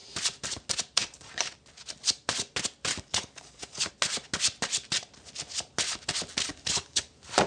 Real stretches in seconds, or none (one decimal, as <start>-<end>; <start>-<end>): 0.0-2.9; 3.9-6.5; 7.1-7.5